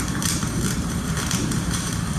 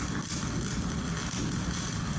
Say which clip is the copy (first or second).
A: first